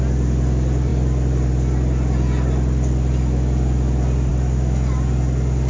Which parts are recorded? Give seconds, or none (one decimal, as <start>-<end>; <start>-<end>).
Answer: 0.0-5.7